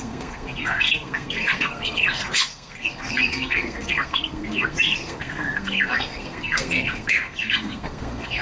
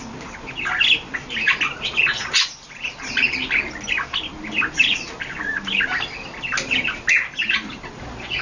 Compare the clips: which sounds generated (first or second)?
first